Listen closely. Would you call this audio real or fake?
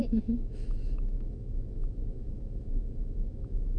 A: fake